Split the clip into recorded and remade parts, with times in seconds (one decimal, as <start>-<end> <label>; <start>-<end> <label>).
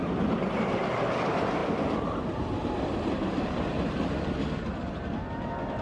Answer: 0.0-5.8 recorded